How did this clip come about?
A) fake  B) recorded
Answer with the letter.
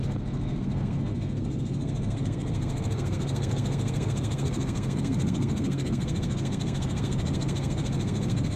A